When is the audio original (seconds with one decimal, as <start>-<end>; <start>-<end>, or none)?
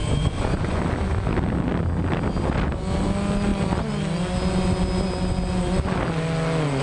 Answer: 0.8-6.8